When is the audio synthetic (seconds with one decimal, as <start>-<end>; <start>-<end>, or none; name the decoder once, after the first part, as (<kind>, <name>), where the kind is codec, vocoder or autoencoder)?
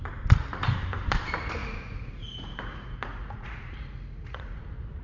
1.6-4.6 (vocoder, Vocos)